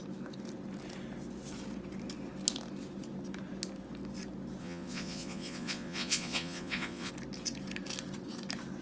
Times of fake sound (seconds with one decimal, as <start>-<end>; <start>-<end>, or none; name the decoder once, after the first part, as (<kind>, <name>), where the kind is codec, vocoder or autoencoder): 4.6-7.1 (vocoder, Vocos)